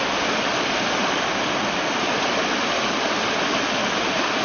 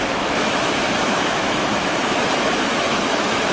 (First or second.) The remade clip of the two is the second